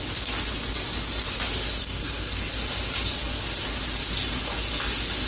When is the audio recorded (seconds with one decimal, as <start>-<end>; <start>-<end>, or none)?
0.0-1.8; 2.5-5.3